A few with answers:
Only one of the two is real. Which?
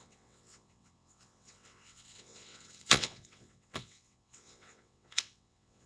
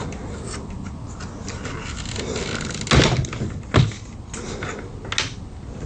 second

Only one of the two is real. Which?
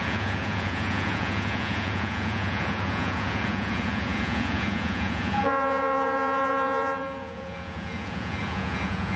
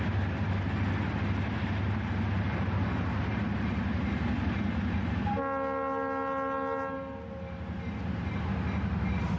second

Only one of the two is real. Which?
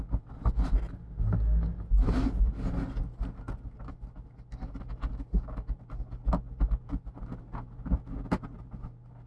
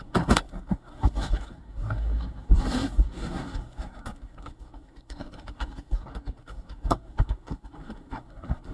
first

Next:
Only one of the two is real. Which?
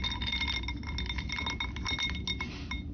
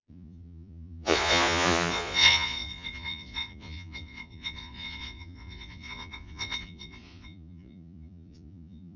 first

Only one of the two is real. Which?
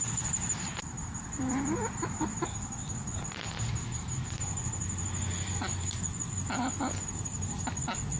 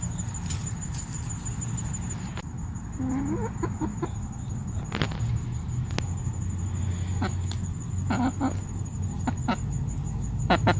second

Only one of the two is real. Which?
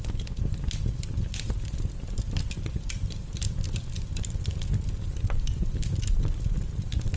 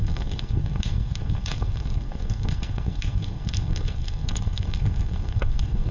first